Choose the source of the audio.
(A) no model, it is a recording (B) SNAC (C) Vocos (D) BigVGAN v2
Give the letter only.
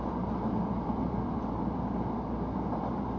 D